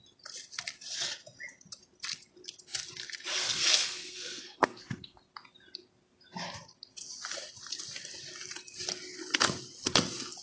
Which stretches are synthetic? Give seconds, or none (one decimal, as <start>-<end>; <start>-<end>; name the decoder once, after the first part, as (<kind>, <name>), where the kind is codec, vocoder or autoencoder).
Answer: 3.3-5.2 (codec, SNAC)